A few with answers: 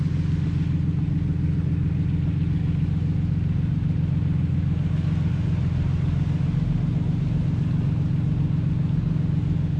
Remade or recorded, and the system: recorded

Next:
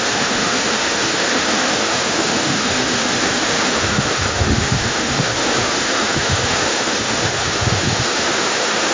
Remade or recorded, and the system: remade, autoencoder, DAC-VAE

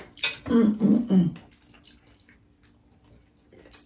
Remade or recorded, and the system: recorded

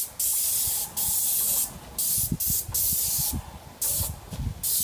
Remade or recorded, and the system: recorded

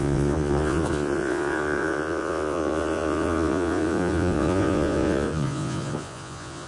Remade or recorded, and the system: remade, vocoder, Vocos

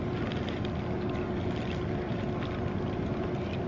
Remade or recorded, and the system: recorded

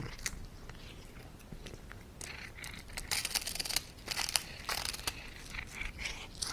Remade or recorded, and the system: remade, vocoder, BigVGAN v2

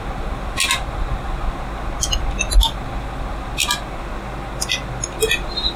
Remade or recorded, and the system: recorded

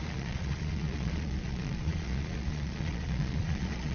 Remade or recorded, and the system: remade, vocoder, Vocos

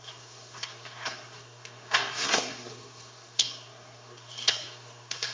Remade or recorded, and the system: remade, codec, SNAC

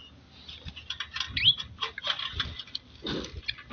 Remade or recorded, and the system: recorded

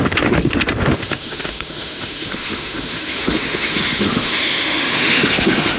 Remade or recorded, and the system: remade, autoencoder, DAC-VAE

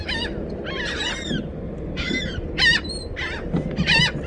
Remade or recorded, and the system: recorded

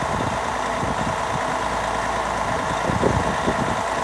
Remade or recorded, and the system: recorded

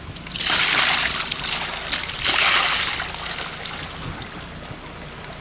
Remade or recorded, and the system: recorded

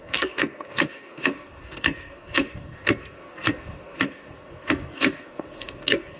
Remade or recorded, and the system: remade, codec, SNAC